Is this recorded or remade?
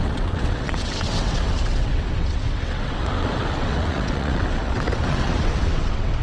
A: remade